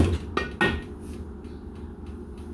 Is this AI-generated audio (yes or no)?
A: no